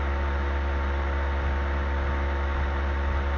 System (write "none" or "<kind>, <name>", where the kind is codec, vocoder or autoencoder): none